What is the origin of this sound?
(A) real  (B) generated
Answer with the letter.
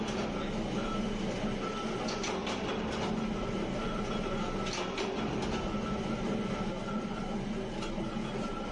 A